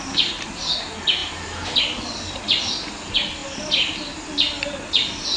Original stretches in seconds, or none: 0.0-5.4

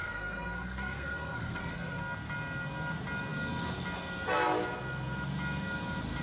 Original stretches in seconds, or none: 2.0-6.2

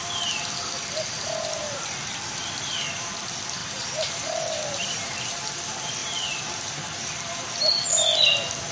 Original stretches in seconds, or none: 0.0-1.6; 2.2-3.6; 5.5-6.0; 7.4-8.7

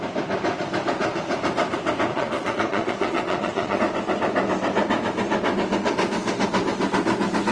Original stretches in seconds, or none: 0.0-2.1; 3.8-7.5

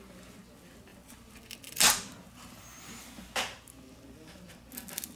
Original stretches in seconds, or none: 0.0-5.2

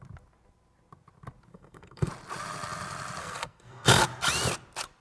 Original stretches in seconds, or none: 0.0-1.5; 2.1-3.2; 4.0-5.0